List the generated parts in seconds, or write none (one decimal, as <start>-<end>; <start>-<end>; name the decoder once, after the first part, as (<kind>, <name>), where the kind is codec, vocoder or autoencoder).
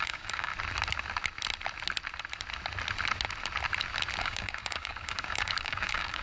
0.0-0.5 (codec, DAC); 4.2-6.2